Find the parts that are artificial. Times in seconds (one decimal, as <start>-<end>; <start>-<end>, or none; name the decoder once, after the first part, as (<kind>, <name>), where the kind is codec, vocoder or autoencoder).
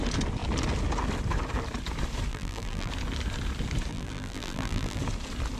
2.3-2.9 (vocoder, BigVGAN v2); 3.9-5.0